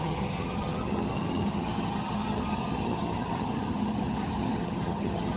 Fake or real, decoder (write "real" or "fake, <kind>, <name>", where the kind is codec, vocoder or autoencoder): fake, vocoder, HiFi-GAN